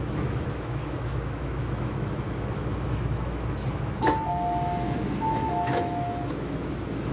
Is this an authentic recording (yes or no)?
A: no